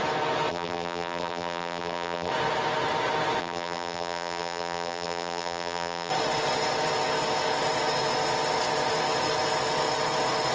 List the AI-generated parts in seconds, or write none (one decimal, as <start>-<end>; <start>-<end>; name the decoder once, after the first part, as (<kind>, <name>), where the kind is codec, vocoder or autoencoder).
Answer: 0.5-2.3 (vocoder, BigVGAN v2); 3.4-6.1